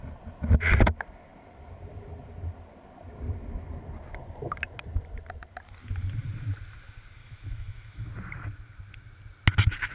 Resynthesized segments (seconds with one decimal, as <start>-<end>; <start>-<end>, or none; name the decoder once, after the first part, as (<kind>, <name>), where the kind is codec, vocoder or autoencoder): 7.2-8.1 (autoencoder, DAC-VAE)